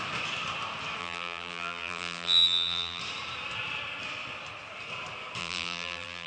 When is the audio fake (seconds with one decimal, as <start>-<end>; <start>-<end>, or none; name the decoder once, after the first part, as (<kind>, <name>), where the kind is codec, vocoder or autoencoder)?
1.0-3.0 (vocoder, BigVGAN v2); 5.4-6.3